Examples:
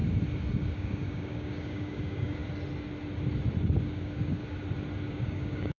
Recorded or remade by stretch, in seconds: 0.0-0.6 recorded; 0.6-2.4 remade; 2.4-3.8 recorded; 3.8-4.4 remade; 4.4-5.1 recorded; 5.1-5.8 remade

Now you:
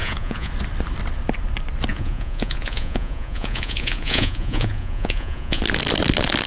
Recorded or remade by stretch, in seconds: 0.0-0.5 remade; 0.5-1.9 recorded; 1.9-5.6 remade; 5.6-6.5 recorded

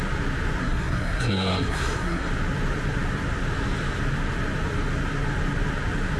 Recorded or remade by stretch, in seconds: 0.0-0.6 recorded; 0.6-2.3 remade; 2.3-6.2 recorded